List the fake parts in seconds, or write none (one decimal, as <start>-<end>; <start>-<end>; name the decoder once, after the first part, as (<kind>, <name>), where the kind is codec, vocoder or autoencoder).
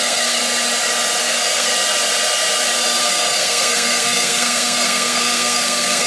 0.0-0.4 (codec, SNAC); 1.2-1.7; 3.0-6.1